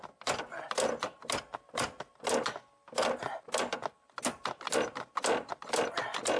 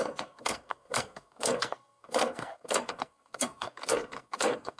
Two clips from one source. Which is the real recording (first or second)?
first